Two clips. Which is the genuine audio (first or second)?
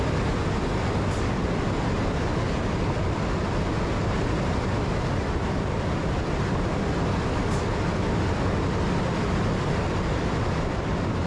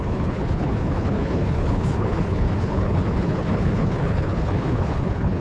first